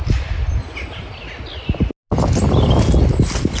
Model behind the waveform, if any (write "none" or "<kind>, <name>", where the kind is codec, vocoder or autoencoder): none